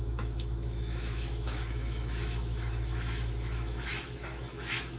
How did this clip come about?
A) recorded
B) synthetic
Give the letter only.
B